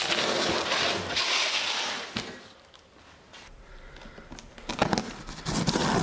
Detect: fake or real real